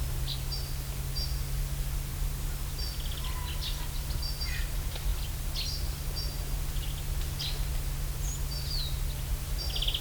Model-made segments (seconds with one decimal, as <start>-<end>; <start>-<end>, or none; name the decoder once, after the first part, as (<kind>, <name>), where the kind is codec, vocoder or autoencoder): none